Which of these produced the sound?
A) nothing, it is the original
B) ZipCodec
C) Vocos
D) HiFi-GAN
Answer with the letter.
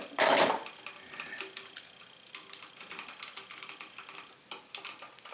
A